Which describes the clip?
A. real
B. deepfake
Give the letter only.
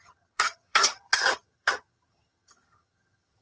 B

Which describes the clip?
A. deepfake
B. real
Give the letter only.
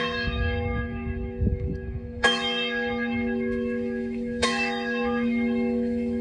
A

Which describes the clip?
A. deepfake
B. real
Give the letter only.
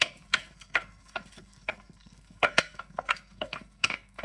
A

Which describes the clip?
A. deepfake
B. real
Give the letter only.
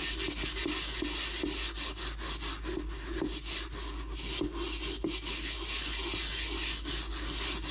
B